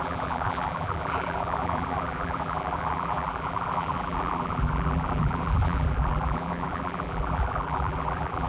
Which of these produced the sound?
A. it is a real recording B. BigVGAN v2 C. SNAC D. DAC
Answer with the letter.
B